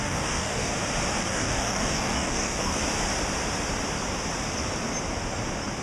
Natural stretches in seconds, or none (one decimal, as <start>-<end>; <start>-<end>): 0.7-1.2; 2.8-5.8